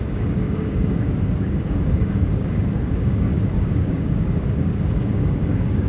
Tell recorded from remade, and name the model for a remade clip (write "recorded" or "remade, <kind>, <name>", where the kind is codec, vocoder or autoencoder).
remade, codec, DAC